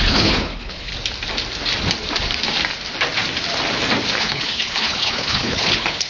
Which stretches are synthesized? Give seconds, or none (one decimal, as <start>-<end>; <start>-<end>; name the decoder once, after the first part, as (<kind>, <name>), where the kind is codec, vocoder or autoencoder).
0.0-0.9 (codec, HILCodec); 4.2-6.1